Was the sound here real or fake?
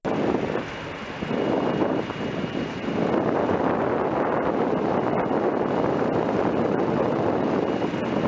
real